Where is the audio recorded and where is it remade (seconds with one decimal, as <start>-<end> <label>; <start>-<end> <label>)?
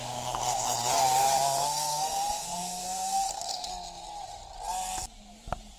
0.0-3.7 remade; 3.7-5.8 recorded